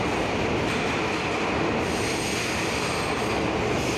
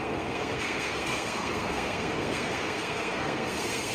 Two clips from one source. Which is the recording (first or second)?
first